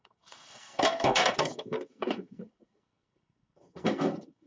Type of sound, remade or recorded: remade